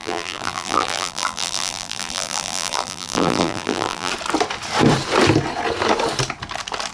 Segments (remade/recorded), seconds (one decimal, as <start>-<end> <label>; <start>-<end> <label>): 0.0-4.1 remade; 4.1-6.9 recorded